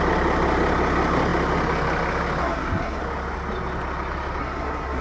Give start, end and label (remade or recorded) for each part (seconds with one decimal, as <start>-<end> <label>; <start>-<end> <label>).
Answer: 0.0-2.4 recorded; 2.4-3.0 remade; 3.0-4.4 recorded; 4.4-5.0 remade